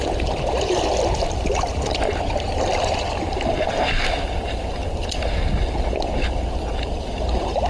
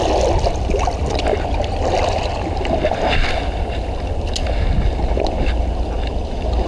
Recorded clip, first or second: second